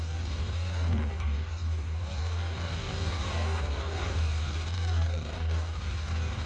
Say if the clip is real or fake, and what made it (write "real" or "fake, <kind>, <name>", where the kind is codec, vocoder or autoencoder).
fake, codec, DAC